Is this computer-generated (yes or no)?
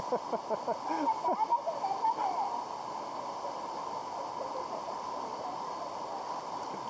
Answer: no